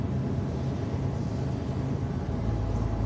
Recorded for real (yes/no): yes